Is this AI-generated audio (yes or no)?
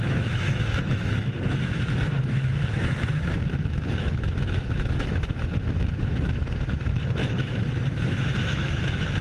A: yes